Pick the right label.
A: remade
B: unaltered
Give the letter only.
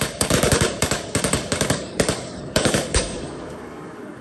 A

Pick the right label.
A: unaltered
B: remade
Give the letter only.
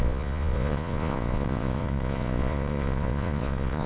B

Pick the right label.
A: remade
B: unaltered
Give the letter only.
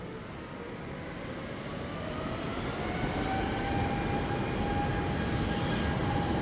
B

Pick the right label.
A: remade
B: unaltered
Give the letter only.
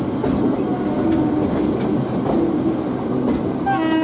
B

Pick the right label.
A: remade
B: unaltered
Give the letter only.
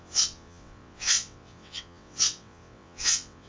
A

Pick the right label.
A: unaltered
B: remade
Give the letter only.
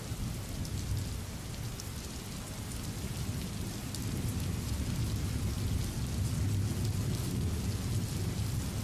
A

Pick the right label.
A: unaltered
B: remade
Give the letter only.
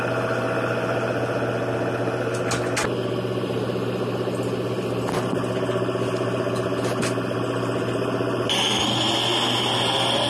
A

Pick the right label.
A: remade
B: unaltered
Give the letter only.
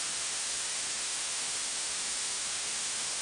A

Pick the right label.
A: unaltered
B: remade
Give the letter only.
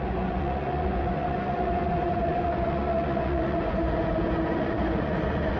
B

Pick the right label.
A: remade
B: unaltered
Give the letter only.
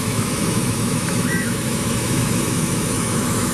A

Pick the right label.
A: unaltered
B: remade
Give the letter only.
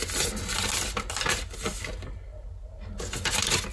A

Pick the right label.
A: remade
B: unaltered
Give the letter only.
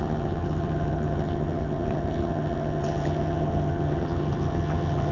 A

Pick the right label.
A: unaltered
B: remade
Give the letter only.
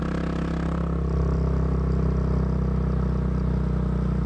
A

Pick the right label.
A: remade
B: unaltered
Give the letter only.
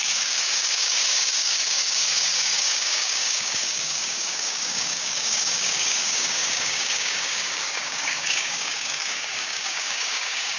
A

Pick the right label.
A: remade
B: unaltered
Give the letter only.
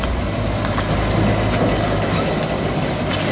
B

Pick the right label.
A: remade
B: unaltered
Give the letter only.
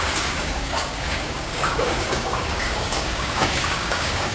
A